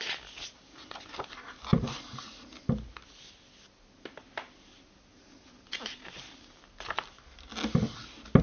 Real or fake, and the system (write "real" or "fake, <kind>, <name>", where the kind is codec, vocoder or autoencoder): real